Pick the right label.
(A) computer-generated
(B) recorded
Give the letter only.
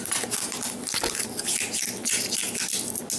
B